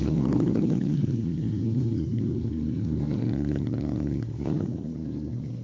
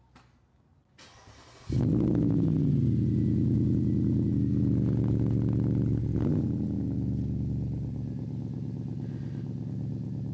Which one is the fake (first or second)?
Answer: first